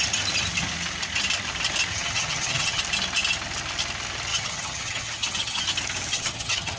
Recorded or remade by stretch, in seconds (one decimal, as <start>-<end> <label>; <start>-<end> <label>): 0.0-1.9 recorded; 1.9-2.8 remade; 2.8-4.3 recorded; 4.3-5.6 remade; 5.6-6.1 recorded; 6.1-6.8 remade